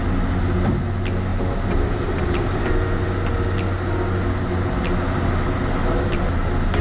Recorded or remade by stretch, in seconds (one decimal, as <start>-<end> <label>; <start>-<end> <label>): 0.0-1.3 recorded; 1.3-2.7 remade; 2.7-5.8 recorded; 5.8-6.3 remade; 6.3-6.8 recorded